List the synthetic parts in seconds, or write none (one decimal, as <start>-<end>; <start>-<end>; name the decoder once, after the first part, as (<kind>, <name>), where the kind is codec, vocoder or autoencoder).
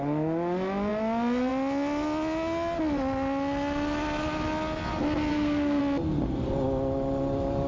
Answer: 5.3-5.8 (codec, SNAC)